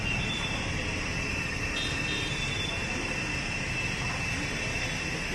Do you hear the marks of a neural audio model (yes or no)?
no